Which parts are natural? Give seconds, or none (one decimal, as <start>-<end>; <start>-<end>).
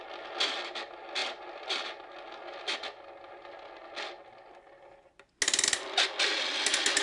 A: 0.0-7.0